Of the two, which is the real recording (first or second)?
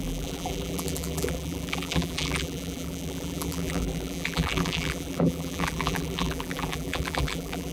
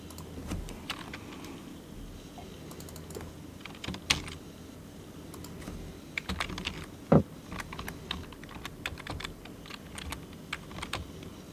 second